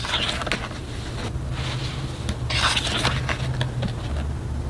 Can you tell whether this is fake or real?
real